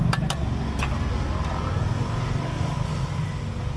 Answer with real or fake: real